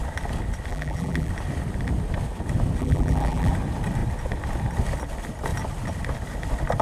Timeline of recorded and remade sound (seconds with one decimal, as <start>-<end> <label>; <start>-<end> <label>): 0.0-0.7 recorded; 0.7-1.3 remade; 1.3-2.8 recorded; 2.8-3.5 remade; 3.5-6.8 recorded